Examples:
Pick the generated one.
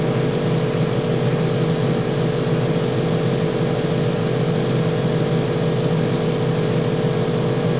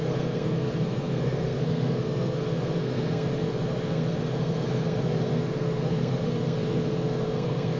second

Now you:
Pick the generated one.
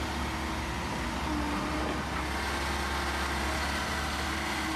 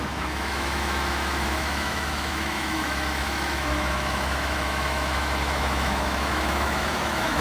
second